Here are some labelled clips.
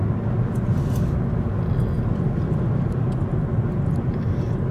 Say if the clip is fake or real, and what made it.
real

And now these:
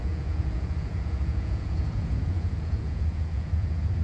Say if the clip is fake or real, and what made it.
fake, vocoder, Vocos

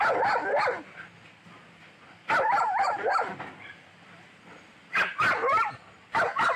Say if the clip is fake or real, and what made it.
real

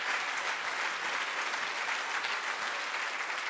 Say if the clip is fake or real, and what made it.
real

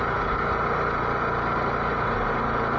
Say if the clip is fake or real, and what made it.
real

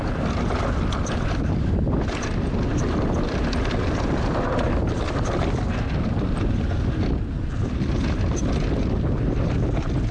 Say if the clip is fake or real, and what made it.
real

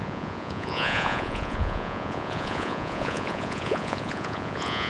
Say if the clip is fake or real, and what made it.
fake, vocoder, Vocos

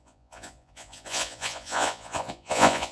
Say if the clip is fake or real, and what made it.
fake, vocoder, Vocos